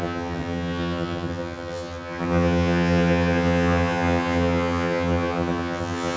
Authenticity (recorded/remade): remade